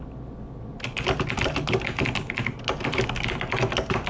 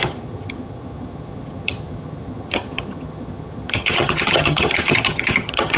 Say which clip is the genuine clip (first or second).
first